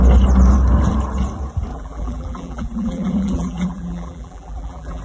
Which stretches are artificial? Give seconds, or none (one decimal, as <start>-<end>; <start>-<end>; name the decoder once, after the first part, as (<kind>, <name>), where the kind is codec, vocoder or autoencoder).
1.7-5.0 (vocoder, BigVGAN v2)